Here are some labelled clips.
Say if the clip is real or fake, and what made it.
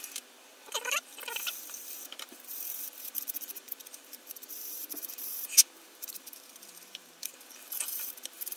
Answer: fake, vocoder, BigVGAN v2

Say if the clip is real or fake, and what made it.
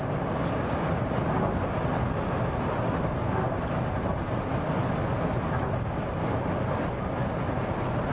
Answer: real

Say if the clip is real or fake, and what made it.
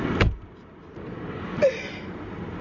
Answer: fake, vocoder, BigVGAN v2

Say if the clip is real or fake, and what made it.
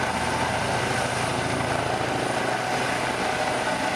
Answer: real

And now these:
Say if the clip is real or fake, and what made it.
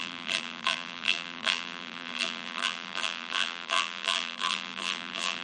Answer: fake, vocoder, BigVGAN v2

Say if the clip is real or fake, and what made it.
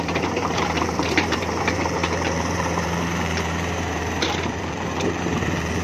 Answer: fake, vocoder, BigVGAN v2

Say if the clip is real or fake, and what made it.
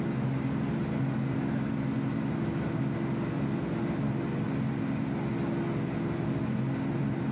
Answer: real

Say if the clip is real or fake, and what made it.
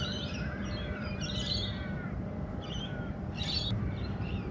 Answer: fake, vocoder, BigVGAN v2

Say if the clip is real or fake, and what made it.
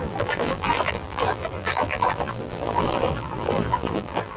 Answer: fake, vocoder, BigVGAN v2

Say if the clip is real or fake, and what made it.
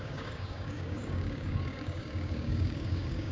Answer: fake, codec, DAC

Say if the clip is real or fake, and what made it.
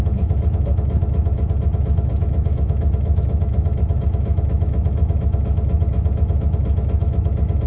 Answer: fake, autoencoder, DAC-VAE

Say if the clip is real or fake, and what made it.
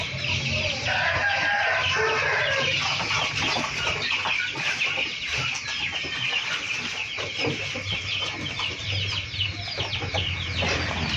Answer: real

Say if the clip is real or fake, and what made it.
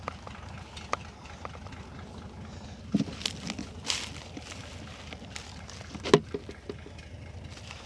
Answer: real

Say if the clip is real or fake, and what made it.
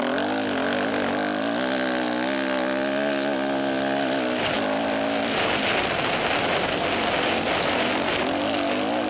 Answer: real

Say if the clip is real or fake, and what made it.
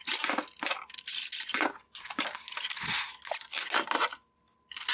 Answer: real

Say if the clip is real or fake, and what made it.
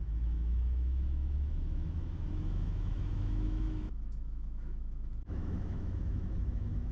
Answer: fake, autoencoder, DAC-VAE